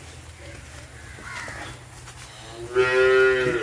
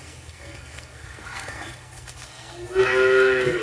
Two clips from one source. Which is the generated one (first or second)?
second